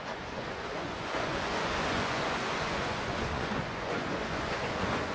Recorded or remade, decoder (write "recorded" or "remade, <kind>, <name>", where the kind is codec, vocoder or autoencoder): remade, vocoder, Vocos